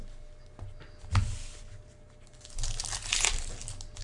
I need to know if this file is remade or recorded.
recorded